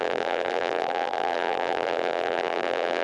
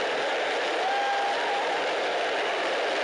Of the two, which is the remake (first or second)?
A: first